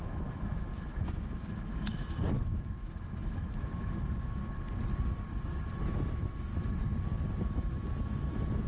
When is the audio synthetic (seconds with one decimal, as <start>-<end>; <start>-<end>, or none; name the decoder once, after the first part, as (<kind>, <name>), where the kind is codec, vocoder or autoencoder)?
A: 0.0-4.4 (autoencoder, DAC-VAE); 5.9-6.5; 7.4-8.7